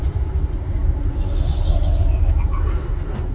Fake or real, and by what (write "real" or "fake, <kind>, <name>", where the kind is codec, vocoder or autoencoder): real